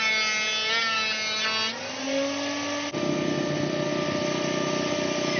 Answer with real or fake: real